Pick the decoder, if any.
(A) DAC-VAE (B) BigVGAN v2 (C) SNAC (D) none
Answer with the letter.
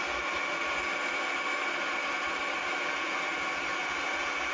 D